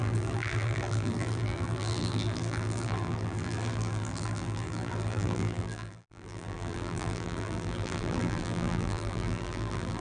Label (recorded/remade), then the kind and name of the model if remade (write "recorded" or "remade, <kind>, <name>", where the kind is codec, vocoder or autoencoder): remade, vocoder, BigVGAN v2